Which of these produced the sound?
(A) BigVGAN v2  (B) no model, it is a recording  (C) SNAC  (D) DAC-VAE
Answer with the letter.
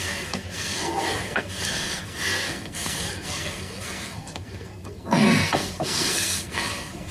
C